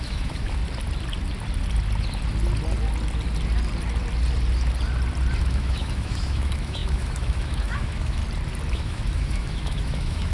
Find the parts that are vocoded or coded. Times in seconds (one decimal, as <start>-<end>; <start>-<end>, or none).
0.0-0.6; 5.4-8.2; 8.7-10.3